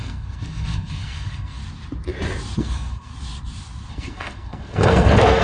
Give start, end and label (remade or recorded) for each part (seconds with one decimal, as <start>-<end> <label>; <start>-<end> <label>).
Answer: 0.0-1.6 remade; 1.6-2.6 recorded; 2.6-3.1 remade; 3.1-3.9 recorded; 3.9-5.4 remade